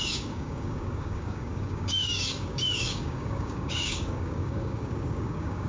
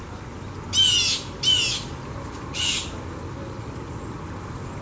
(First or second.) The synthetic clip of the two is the first